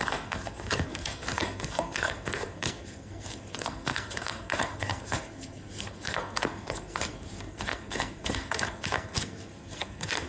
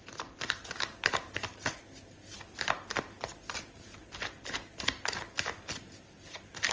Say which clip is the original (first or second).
second